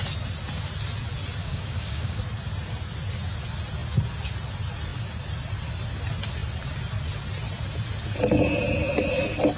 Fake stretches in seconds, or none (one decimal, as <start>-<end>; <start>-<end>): 1.4-2.2